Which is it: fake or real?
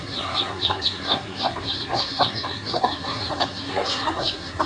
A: fake